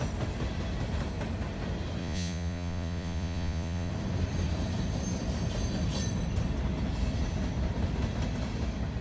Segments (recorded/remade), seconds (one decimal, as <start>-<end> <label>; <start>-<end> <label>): 0.0-2.0 recorded; 2.0-3.9 remade; 3.9-9.0 recorded